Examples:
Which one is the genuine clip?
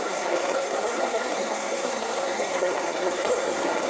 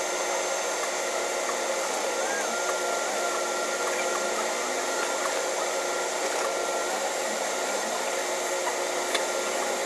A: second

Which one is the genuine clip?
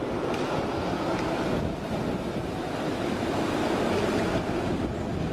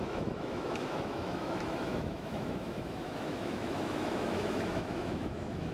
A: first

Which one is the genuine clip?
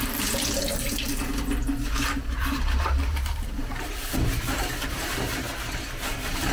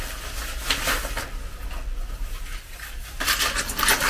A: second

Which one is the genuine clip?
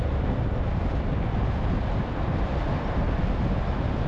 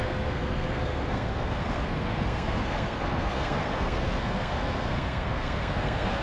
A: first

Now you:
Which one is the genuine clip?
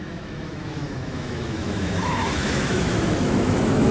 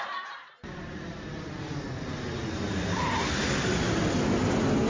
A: second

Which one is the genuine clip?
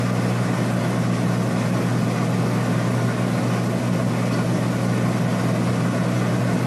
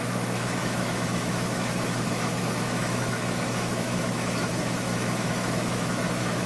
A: first